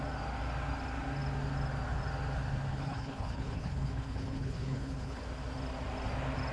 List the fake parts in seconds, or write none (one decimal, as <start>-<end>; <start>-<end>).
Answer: 2.7-5.2